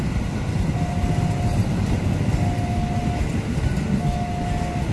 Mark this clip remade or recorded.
recorded